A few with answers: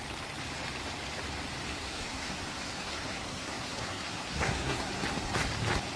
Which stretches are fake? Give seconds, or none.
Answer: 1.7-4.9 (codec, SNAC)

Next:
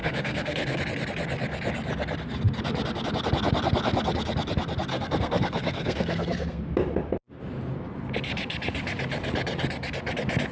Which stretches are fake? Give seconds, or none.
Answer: 0.0-0.8 (codec, SNAC); 4.9-6.6

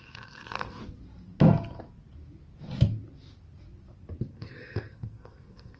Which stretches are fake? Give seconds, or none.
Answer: 0.0-0.8 (codec, SNAC); 4.3-5.8

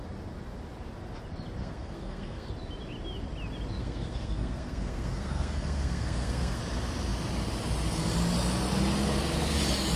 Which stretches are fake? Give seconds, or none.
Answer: 1.6-2.5 (codec, SNAC); 3.8-6.6

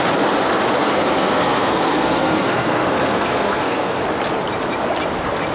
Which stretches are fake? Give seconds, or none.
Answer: 0.8-4.0 (codec, SNAC)